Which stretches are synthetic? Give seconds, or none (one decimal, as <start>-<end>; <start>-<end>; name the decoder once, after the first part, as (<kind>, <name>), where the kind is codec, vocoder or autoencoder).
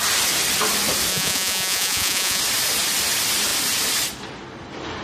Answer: 1.1-2.4 (vocoder, Vocos)